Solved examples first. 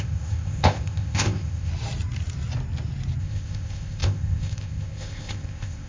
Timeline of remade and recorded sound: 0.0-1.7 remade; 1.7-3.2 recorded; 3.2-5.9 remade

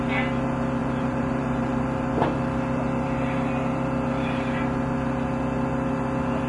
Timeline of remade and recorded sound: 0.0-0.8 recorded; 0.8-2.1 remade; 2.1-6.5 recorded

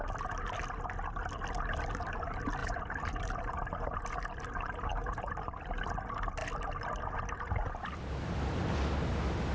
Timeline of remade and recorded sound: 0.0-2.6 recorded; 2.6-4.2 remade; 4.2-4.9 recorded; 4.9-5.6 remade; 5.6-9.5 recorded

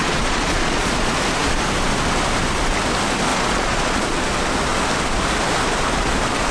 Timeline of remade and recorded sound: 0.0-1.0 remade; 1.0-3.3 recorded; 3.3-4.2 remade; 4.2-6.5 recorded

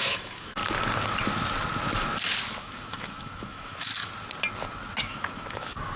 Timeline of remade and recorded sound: 0.0-0.6 remade; 0.6-2.6 recorded; 2.6-3.9 remade; 3.9-5.0 recorded; 5.0-6.0 remade

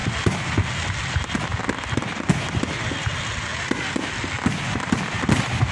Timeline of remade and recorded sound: 0.0-5.7 recorded

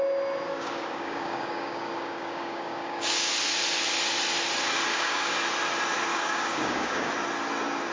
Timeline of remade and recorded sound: 0.0-0.5 recorded; 0.5-3.3 remade; 3.3-4.9 recorded; 4.9-5.4 remade; 5.4-6.1 recorded; 6.1-7.1 remade; 7.1-7.9 recorded